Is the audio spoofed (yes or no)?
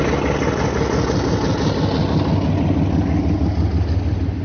no